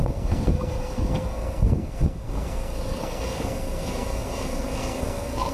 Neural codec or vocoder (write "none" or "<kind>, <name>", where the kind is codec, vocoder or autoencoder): codec, SNAC